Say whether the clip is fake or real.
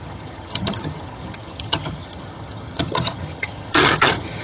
fake